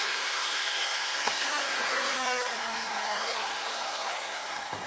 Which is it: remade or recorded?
remade